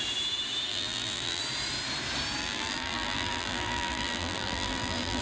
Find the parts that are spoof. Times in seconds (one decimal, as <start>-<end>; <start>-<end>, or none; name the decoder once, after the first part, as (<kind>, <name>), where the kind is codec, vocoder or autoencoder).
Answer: 0.7-1.4 (vocoder, BigVGAN v2); 2.4-5.2